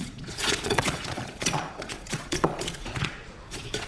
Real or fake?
fake